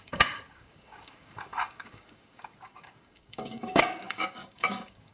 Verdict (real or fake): fake